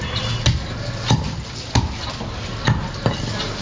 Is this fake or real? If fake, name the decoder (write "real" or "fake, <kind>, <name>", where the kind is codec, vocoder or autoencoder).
real